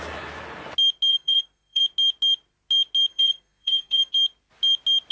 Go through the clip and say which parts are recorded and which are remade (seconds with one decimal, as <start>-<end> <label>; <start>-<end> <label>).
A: 0.0-1.1 recorded; 1.1-1.8 remade; 1.8-3.1 recorded; 3.1-4.1 remade; 4.1-5.1 recorded